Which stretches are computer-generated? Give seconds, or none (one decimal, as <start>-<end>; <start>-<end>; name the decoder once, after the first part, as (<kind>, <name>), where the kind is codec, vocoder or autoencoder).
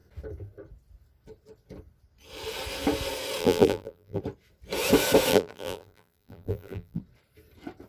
3.4-4.2 (vocoder, BigVGAN v2); 5.3-7.0